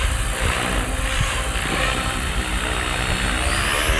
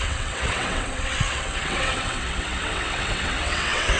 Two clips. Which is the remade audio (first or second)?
second